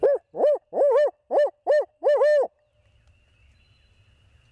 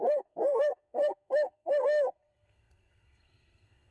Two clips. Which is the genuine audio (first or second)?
first